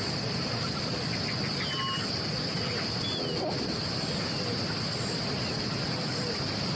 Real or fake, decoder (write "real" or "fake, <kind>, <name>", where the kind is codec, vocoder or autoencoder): real